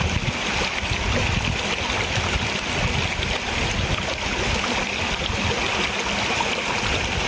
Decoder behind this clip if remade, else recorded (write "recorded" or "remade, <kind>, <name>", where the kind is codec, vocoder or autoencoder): recorded